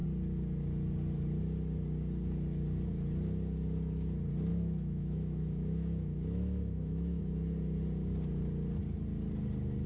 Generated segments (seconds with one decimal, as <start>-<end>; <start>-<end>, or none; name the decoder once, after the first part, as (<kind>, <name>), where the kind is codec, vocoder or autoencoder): 4.5-7.2 (autoencoder, DAC-VAE)